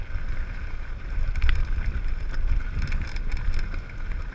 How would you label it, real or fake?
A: real